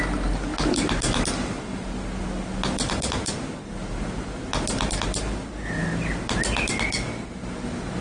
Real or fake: real